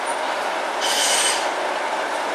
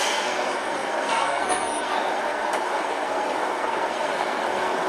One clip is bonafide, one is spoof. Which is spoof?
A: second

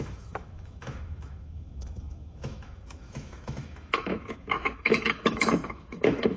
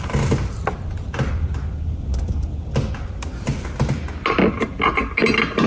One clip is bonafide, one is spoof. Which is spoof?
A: first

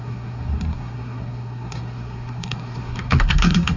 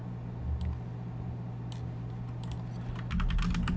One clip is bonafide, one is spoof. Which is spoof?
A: first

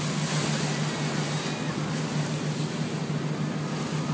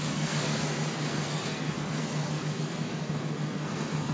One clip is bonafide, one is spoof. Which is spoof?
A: second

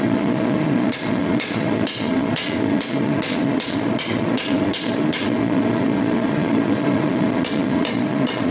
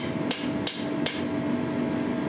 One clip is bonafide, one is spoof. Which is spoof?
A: first